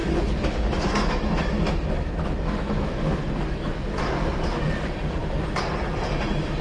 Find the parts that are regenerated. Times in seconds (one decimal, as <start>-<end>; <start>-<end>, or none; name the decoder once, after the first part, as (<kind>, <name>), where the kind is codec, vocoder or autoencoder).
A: 0.0-4.0 (autoencoder, DAC-VAE)